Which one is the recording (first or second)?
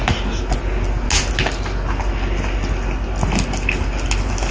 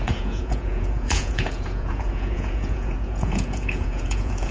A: first